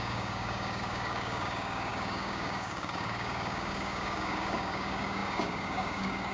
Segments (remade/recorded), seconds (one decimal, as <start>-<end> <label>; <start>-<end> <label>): 0.0-6.3 remade